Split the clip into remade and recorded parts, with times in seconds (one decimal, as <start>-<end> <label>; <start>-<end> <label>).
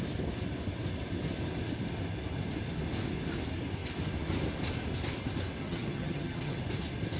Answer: 0.0-5.6 recorded; 5.6-6.6 remade; 6.6-7.2 recorded